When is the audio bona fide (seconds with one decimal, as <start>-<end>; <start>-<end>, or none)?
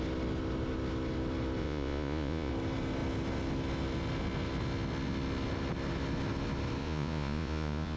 0.0-1.6; 2.5-6.8